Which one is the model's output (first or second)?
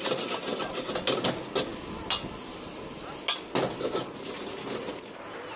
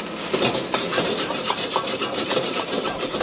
second